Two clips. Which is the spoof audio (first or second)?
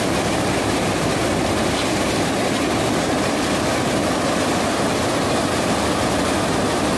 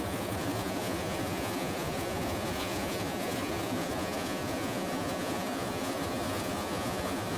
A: second